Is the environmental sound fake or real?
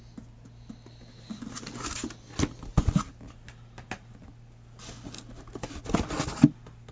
real